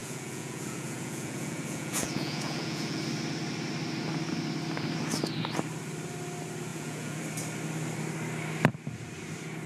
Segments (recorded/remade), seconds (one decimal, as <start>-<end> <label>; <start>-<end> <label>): 0.0-3.0 remade; 3.0-6.7 recorded; 6.7-7.2 remade; 7.2-9.7 recorded